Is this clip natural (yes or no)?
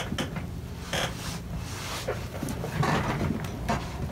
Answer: yes